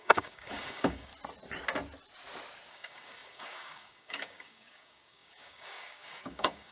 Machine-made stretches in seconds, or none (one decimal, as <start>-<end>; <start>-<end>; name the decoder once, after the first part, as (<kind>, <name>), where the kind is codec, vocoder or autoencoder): 0.0-1.1 (codec, DAC); 2.7-6.7